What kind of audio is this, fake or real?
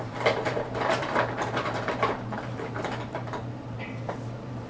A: fake